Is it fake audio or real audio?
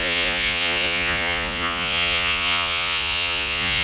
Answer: fake